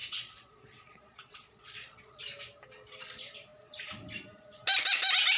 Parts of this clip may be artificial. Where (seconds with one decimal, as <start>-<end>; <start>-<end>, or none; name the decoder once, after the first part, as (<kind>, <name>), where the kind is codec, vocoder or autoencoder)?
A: 0.0-2.2 (vocoder, Vocos)